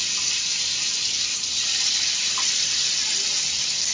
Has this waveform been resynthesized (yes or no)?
yes